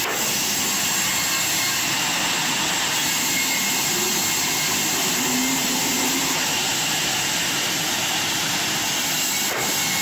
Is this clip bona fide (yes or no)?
yes